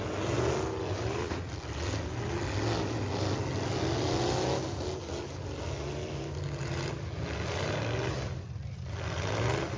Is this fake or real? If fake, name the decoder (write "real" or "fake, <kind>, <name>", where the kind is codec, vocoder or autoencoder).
real